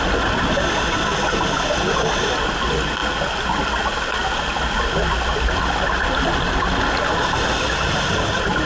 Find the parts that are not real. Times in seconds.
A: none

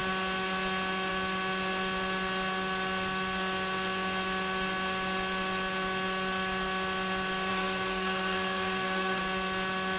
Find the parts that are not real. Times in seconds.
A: 7.5-9.2

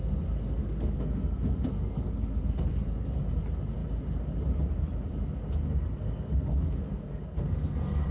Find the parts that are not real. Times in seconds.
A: 0.6-3.2; 5.7-8.1